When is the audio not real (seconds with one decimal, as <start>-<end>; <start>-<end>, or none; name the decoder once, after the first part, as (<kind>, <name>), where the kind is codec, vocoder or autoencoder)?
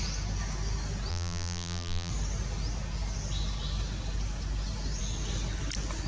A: 1.1-2.1 (vocoder, BigVGAN v2)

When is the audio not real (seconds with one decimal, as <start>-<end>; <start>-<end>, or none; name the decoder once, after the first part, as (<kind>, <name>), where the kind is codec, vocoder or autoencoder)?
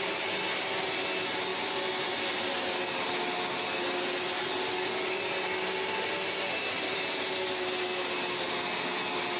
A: none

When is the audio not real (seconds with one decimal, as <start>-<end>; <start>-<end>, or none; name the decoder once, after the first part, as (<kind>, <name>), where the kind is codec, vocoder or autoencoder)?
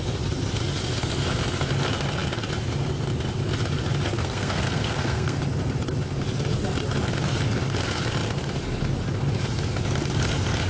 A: 4.2-5.4 (codec, SNAC)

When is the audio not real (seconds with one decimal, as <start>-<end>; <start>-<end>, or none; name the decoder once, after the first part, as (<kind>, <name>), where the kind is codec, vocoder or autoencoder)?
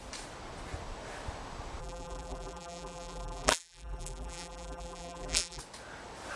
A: 1.8-5.6 (vocoder, BigVGAN v2)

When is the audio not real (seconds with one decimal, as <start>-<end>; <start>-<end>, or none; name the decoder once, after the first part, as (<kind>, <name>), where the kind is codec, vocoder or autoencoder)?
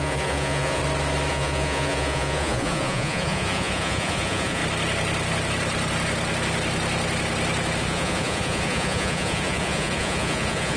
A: 0.0-0.8 (vocoder, Vocos); 1.3-4.6; 7.8-10.8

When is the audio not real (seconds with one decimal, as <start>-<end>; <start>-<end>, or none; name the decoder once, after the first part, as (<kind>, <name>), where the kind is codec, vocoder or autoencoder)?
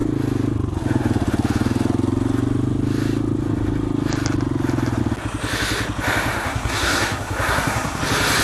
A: 6.3-8.0 (codec, SNAC)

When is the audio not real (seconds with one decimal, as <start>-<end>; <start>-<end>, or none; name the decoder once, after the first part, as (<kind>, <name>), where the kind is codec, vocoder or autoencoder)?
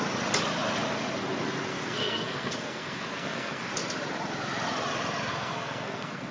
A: 1.7-3.7 (codec, SNAC); 5.3-6.3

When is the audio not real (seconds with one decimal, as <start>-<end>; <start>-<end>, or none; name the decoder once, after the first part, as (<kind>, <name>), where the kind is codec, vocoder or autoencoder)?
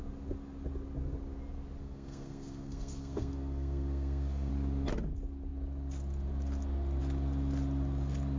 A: 1.8-4.5 (codec, SNAC)